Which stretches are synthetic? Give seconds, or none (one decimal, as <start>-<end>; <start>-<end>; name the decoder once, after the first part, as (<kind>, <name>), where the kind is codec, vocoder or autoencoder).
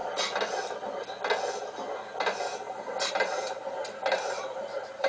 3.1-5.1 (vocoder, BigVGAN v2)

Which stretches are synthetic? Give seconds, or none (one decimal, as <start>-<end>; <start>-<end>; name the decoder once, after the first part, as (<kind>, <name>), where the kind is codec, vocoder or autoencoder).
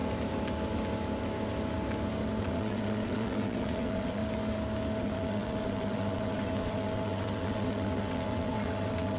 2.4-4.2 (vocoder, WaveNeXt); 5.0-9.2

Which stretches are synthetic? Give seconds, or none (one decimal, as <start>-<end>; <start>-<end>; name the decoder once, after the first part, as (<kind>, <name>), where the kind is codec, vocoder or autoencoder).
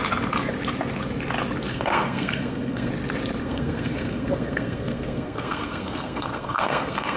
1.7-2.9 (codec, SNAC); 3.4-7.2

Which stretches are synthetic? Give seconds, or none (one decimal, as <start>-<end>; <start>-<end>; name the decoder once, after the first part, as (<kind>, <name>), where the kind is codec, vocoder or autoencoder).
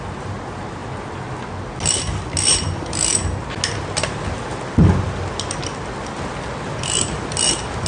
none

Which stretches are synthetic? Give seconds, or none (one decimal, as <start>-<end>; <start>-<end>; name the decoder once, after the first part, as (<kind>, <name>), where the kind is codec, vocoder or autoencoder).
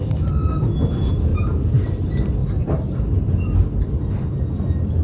1.3-2.0 (vocoder, BigVGAN v2)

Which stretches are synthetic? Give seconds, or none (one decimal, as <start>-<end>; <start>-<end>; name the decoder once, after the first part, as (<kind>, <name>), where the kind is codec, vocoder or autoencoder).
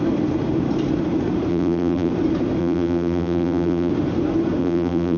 1.5-2.1 (vocoder, BigVGAN v2); 2.6-3.9; 4.6-5.2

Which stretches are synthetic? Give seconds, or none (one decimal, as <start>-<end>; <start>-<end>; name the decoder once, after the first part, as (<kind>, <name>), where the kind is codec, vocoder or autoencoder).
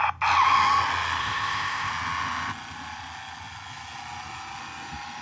1.2-1.9 (codec, ZipCodec)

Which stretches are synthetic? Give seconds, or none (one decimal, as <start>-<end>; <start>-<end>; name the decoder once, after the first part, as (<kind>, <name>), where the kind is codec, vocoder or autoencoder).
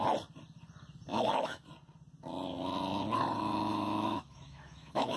1.1-1.7 (autoencoder, DAC-VAE); 3.7-5.2